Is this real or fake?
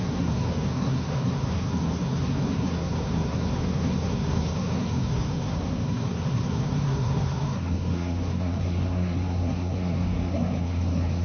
fake